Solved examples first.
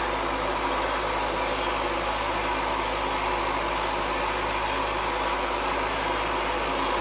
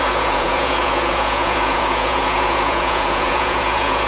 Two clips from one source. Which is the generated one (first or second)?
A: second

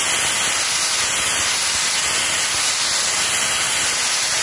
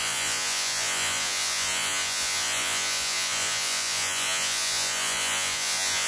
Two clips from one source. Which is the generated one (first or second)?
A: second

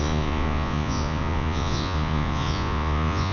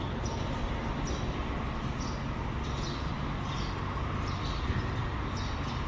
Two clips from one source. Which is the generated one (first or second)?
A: first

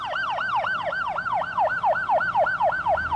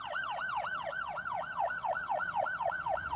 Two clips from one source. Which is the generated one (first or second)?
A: second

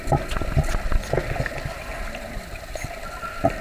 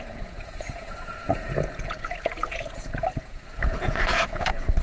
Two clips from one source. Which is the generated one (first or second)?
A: second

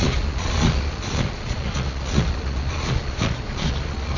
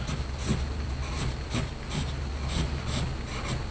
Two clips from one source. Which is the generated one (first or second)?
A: first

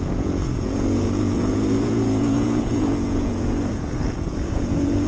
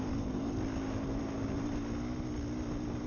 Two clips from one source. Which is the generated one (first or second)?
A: first